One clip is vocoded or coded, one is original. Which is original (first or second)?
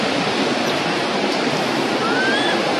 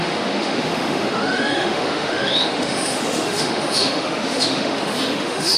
first